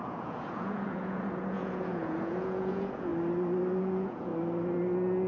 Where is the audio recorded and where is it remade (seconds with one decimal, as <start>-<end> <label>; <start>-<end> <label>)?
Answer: 0.0-3.1 remade; 3.1-3.8 recorded; 3.8-4.3 remade; 4.3-5.3 recorded